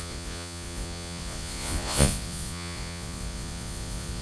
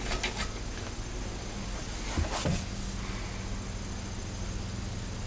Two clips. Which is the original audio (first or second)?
second